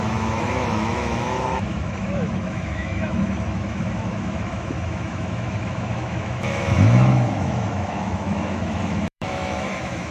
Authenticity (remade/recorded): remade